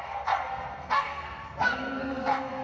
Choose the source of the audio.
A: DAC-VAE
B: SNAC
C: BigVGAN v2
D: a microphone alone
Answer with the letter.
B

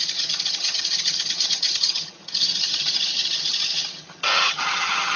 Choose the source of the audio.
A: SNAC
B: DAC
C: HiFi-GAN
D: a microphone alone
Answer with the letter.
C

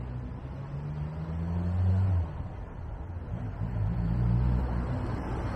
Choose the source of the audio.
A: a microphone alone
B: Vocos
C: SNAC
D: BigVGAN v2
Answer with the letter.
A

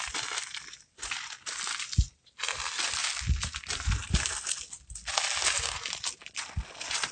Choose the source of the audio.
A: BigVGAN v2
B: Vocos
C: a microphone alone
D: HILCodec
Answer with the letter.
C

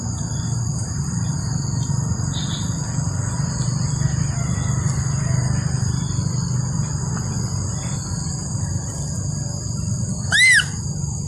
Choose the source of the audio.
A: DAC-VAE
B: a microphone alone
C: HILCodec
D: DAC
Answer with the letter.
B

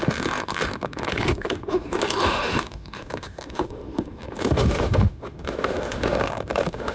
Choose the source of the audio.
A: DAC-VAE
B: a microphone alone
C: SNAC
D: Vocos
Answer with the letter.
A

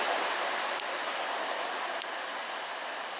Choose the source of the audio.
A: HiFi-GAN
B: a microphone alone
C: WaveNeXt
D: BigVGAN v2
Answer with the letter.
B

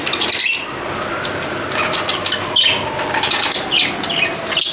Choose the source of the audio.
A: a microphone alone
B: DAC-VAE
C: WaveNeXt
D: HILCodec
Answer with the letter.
A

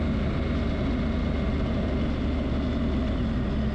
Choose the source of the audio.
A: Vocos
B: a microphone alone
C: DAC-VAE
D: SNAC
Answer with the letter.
B